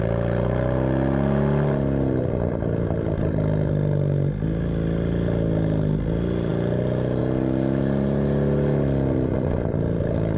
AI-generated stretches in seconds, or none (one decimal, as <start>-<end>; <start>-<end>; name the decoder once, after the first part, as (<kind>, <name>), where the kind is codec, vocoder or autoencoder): none